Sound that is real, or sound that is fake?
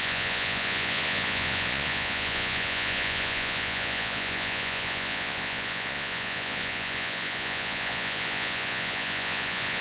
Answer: fake